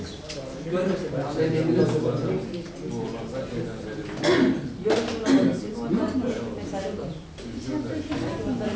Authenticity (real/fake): real